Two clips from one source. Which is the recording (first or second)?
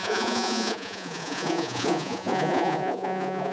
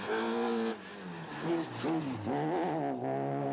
second